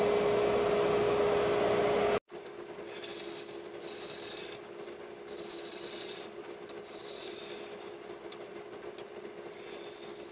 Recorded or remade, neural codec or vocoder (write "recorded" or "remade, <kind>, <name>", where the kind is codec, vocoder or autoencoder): recorded